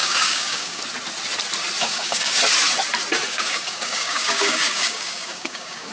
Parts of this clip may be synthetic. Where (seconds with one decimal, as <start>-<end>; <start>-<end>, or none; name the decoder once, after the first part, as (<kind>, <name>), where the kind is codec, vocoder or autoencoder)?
0.0-0.8 (codec, DAC); 1.8-2.4; 3.3-5.9